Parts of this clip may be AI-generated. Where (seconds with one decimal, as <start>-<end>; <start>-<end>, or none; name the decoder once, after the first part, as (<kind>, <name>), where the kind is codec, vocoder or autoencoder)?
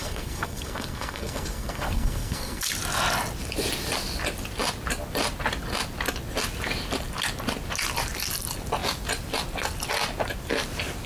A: 0.0-2.6 (codec, SNAC)